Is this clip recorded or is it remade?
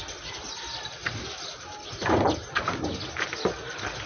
recorded